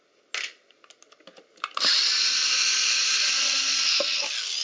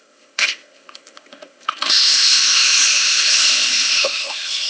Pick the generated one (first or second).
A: second